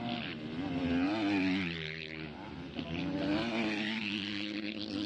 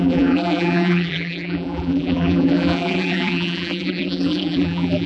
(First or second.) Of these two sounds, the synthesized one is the second